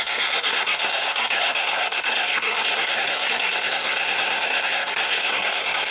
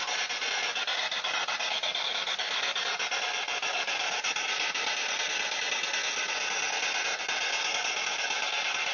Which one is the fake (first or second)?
first